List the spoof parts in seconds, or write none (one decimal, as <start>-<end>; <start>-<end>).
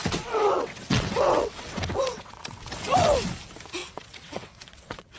0.0-3.1; 3.8-5.2